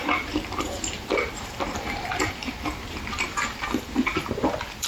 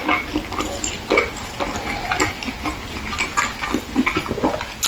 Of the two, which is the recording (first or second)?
second